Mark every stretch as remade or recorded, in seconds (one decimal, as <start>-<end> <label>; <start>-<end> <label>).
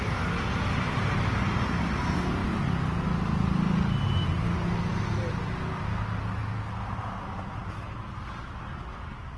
0.0-9.4 recorded